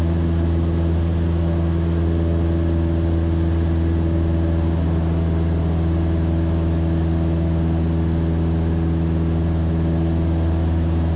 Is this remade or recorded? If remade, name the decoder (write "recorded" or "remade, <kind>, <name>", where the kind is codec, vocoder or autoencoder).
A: recorded